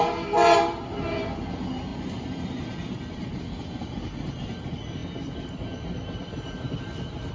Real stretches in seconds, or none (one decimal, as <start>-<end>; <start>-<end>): 0.0-1.9; 3.4-5.0